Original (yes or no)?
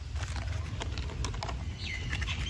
yes